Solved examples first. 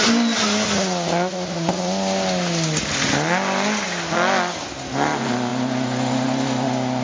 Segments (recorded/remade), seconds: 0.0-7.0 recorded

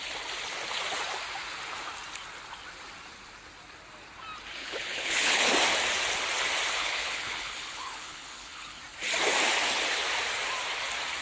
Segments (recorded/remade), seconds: 0.0-4.6 recorded; 4.6-5.4 remade; 5.4-6.8 recorded; 6.8-8.8 remade; 8.8-11.2 recorded

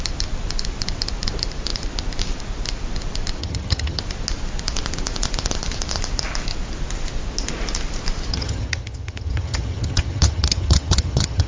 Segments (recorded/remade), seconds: 0.0-3.4 recorded; 3.4-4.0 remade; 4.0-8.3 recorded; 8.3-11.5 remade

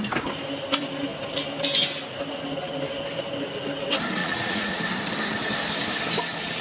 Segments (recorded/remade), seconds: 0.0-4.2 recorded; 4.2-4.8 remade; 4.8-6.6 recorded

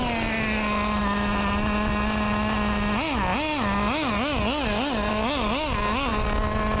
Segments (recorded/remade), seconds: 0.0-6.8 recorded